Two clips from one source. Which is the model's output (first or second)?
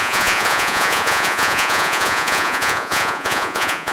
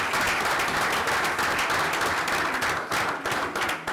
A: first